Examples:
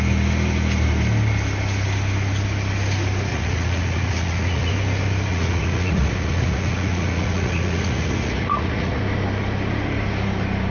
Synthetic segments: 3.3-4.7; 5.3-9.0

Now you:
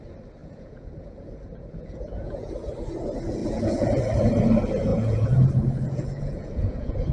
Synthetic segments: 0.4-2.5; 3.4-4.0; 4.9-7.1